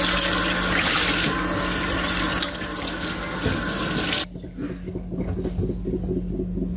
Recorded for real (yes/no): yes